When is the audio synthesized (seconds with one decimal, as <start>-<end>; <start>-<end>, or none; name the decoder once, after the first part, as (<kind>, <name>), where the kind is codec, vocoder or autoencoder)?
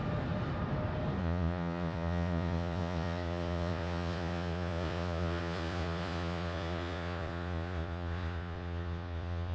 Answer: 1.2-9.5 (vocoder, Vocos)